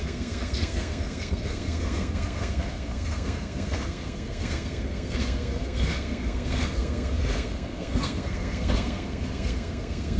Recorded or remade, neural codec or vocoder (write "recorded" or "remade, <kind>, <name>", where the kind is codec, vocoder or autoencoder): remade, codec, SNAC